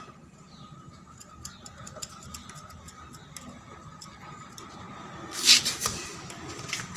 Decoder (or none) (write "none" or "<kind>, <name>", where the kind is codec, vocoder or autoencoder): none